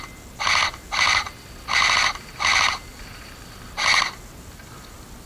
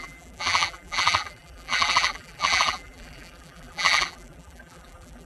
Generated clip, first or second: second